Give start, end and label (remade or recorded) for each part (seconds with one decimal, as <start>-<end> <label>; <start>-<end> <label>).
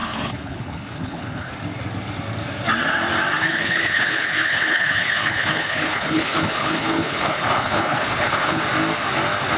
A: 0.0-1.5 remade; 1.5-3.4 recorded; 3.4-8.6 remade; 8.6-9.6 recorded